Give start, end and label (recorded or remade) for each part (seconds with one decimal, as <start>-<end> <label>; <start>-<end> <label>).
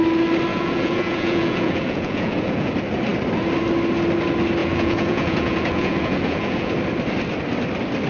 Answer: 0.0-0.5 recorded; 0.5-2.7 remade; 2.7-4.6 recorded; 4.6-6.7 remade; 6.7-8.1 recorded